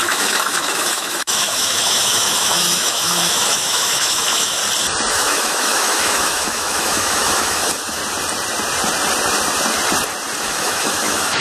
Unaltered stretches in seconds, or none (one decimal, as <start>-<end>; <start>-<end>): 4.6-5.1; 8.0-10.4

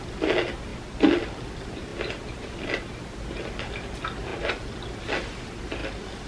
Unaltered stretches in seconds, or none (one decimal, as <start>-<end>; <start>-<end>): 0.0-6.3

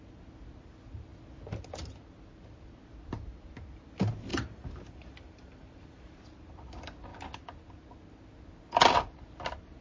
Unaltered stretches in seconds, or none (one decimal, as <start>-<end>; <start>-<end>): 0.0-4.3; 6.2-9.8

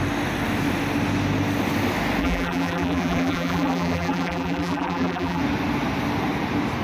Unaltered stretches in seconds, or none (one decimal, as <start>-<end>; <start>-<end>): 0.0-2.2; 5.4-6.8

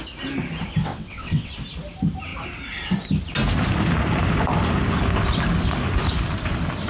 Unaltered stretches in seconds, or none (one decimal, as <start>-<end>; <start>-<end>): 0.0-0.8; 1.5-6.9